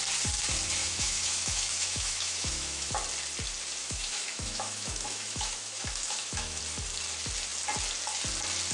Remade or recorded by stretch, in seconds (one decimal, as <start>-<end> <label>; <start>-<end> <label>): 0.0-0.8 recorded; 0.8-2.9 remade; 2.9-3.8 recorded; 3.8-6.6 remade; 6.6-8.7 recorded